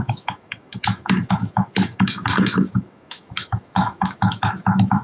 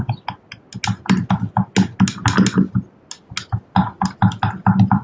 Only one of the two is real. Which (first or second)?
second